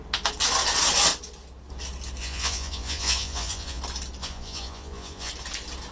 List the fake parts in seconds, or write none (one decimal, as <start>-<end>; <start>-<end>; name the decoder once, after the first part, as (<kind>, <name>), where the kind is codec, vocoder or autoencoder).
2.2-3.8 (vocoder, Vocos); 4.2-5.3